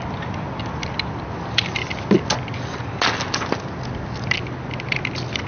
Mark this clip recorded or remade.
recorded